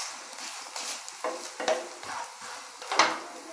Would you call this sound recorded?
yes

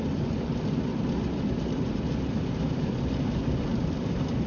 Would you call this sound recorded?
yes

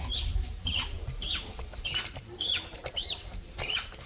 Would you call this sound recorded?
no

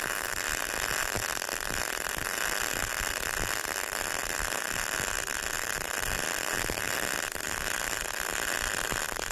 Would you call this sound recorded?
yes